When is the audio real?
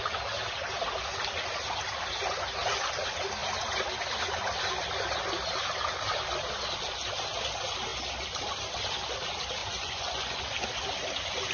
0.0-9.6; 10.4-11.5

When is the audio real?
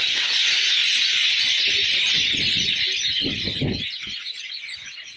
0.0-0.8; 1.5-1.9; 3.5-5.2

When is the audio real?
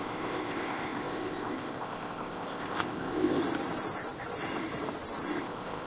3.4-5.4